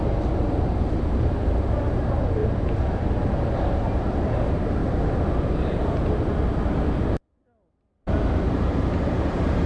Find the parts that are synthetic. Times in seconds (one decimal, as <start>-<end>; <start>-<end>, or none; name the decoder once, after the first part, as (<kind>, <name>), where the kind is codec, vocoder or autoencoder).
0.0-4.8 (vocoder, BigVGAN v2); 8.1-9.7